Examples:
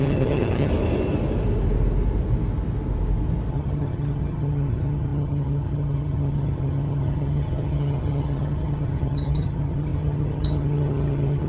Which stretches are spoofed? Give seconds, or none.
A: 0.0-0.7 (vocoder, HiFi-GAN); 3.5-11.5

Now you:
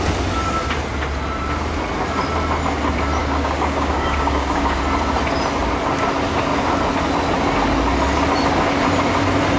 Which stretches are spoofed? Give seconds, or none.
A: 3.2-4.8 (codec, DAC)

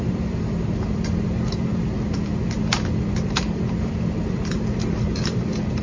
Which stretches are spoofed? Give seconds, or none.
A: 0.0-5.8 (vocoder, BigVGAN v2)

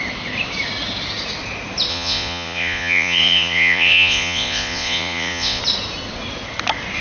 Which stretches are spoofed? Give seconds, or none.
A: 1.9-5.6 (vocoder, Vocos)

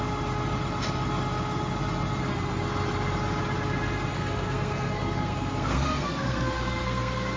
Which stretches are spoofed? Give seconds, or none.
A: 4.1-7.4 (codec, SNAC)